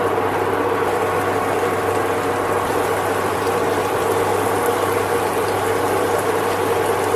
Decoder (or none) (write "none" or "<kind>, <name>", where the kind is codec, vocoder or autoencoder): none